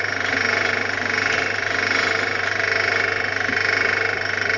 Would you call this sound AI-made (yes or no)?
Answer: no